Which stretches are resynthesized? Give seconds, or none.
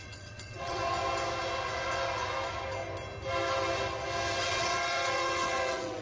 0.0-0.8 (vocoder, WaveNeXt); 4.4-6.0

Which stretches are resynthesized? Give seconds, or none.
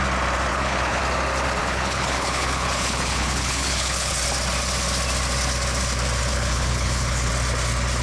0.5-1.0 (codec, HILCodec); 1.6-4.1; 6.3-7.3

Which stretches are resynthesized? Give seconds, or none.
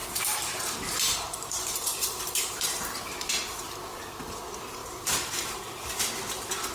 0.0-3.6 (vocoder, BigVGAN v2); 4.8-6.0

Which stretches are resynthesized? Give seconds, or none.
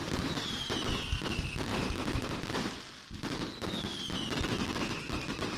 0.0-0.9 (vocoder, BigVGAN v2); 1.7-2.7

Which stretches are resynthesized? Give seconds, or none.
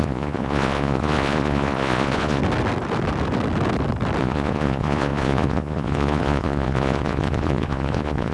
0.0-2.4 (vocoder, Vocos); 4.2-8.3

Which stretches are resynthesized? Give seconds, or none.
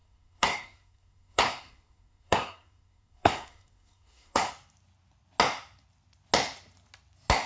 0.0-4.5 (codec, SNAC)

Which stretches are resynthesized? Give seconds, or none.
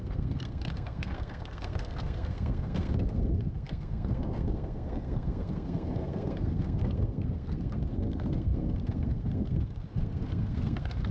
0.0-11.1 (codec, SNAC)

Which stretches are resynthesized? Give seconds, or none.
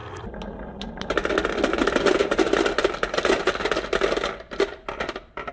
none